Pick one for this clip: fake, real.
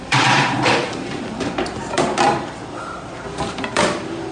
fake